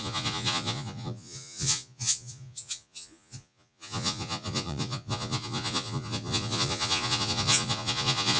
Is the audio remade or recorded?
remade